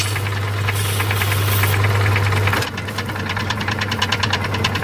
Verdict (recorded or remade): recorded